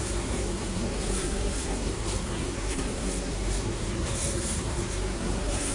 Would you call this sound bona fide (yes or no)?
no